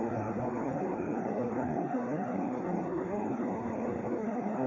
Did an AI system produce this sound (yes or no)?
yes